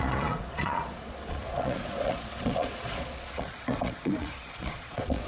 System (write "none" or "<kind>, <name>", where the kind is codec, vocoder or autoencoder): vocoder, Vocos